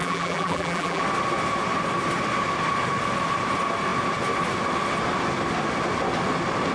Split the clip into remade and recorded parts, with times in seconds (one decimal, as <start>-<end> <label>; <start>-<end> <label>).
0.0-1.0 remade; 1.0-6.7 recorded